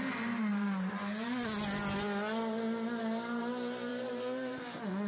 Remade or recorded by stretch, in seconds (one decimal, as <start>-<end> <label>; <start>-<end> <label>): 0.0-3.9 recorded; 3.9-4.6 remade; 4.6-5.1 recorded